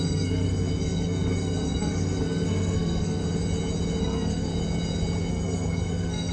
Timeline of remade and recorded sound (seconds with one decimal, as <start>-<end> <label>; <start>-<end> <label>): 0.0-3.2 remade; 3.2-4.0 recorded; 4.0-4.5 remade; 4.5-5.3 recorded; 5.3-6.3 remade

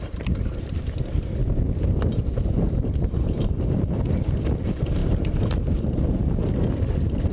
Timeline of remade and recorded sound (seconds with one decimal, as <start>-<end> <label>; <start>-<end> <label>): 0.0-1.4 remade; 1.4-2.2 recorded; 2.2-7.3 remade

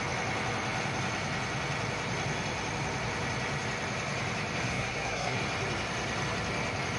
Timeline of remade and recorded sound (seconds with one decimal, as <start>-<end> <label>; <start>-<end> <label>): 0.0-4.7 recorded; 4.7-5.4 remade; 5.4-7.0 recorded

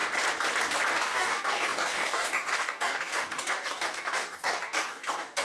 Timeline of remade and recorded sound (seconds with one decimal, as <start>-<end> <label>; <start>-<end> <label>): 0.0-0.9 recorded; 0.9-5.4 remade

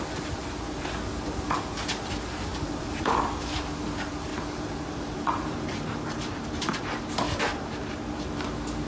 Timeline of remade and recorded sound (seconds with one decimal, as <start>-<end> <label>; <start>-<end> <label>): 0.0-2.5 recorded; 2.5-3.3 remade; 3.3-4.3 recorded; 4.3-6.8 remade; 6.8-7.5 recorded; 7.5-8.0 remade; 8.0-8.9 recorded

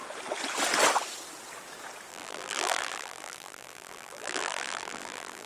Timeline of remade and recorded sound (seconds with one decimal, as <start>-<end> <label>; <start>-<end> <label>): 0.0-2.1 recorded; 2.1-5.5 remade

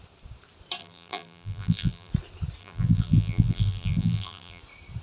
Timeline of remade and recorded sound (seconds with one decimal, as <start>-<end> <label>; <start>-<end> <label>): 0.0-0.8 recorded; 0.8-2.1 remade; 2.1-2.6 recorded; 2.6-4.6 remade; 4.6-5.0 recorded